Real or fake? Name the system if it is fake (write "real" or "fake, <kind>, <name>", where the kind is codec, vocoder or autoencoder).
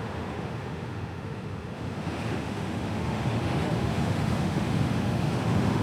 fake, autoencoder, DAC-VAE